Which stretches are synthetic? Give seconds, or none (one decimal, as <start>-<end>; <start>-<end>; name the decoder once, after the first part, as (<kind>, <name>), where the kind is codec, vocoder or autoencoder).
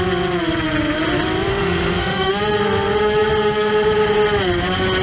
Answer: 1.5-2.3 (autoencoder, DAC-VAE)